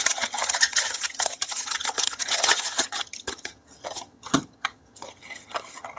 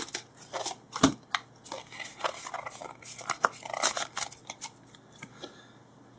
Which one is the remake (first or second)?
first